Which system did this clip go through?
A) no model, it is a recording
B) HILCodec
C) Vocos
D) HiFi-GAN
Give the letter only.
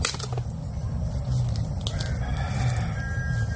A